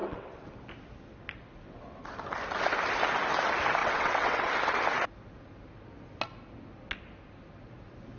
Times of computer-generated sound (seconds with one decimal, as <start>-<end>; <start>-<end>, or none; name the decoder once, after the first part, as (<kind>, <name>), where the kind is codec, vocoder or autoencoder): 0.0-0.5 (vocoder, WaveNeXt); 3.8-4.5